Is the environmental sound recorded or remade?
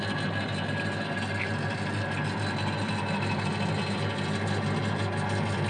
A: recorded